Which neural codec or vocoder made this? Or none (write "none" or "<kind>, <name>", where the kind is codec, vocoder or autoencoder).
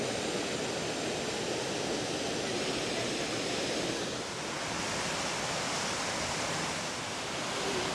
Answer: none